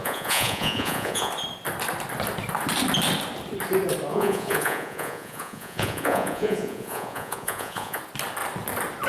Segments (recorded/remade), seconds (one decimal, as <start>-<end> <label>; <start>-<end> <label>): 0.0-1.3 remade; 1.3-4.1 recorded; 4.1-8.0 remade; 8.0-9.1 recorded